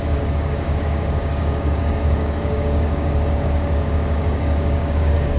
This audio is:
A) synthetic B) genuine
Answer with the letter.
A